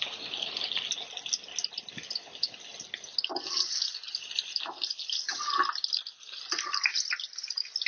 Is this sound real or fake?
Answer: real